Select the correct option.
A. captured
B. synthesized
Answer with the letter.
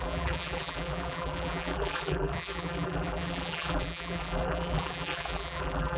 B